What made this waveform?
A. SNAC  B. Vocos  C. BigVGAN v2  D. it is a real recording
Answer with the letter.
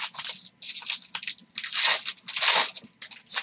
D